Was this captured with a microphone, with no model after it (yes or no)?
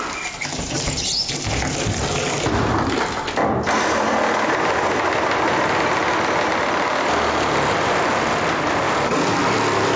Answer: yes